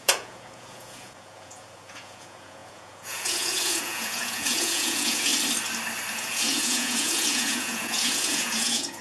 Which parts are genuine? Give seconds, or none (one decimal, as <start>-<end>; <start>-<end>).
5.3-6.1